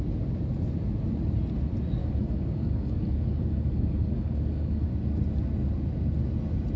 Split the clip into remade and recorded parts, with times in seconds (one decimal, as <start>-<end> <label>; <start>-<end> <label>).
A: 0.0-2.0 recorded; 2.0-4.9 remade; 4.9-6.8 recorded